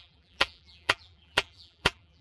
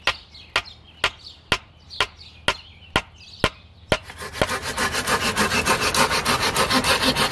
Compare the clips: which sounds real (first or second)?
second